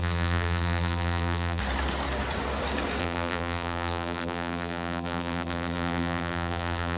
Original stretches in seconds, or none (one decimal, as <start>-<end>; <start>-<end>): 1.6-3.0